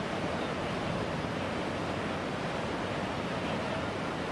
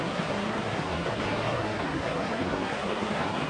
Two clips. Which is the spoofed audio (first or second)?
second